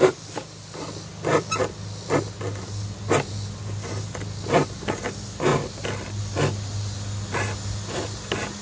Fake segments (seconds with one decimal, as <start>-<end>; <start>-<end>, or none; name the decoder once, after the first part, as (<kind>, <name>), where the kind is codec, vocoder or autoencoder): 5.5-6.2 (vocoder, BigVGAN v2)